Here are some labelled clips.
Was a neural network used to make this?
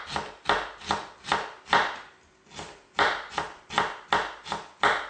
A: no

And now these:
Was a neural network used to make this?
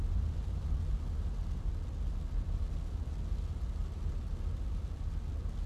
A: no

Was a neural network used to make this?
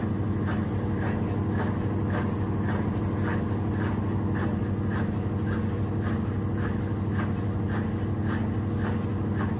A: no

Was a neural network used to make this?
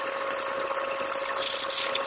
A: no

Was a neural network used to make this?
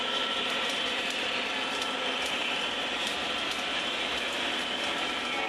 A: yes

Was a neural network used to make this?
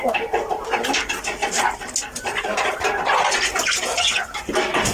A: no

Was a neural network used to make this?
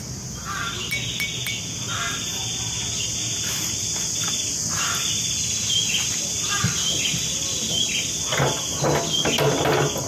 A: no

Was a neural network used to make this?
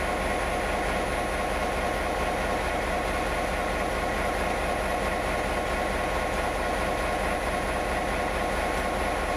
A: no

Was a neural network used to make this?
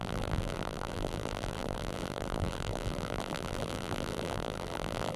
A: yes